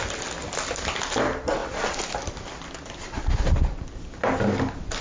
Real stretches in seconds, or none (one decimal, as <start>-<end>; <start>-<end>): 0.0-5.0